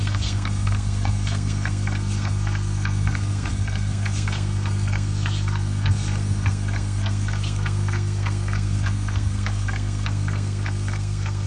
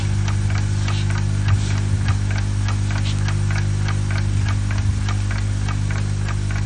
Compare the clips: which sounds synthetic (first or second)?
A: first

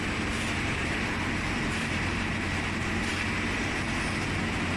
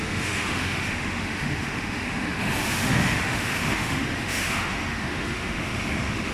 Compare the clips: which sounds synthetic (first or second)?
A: second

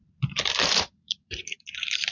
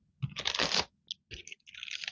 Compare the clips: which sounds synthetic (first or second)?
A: first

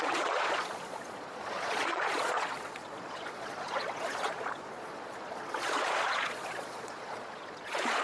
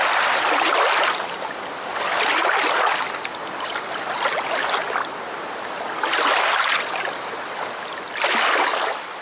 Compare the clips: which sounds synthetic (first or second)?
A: first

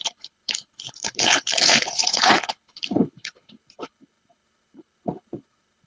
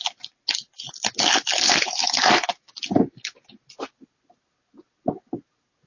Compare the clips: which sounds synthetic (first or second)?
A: first